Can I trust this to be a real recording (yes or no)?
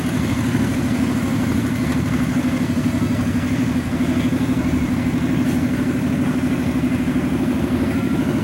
no